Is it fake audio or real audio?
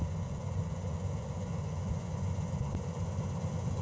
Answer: fake